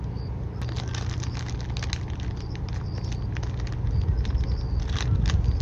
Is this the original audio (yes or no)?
yes